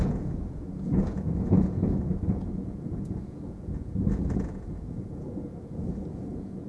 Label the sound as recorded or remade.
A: remade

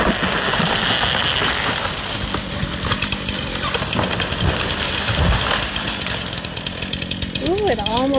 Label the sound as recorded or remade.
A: recorded